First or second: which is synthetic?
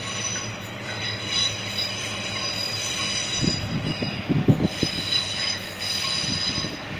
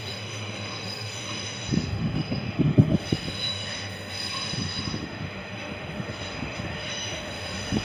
second